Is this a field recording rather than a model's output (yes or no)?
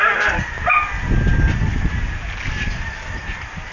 yes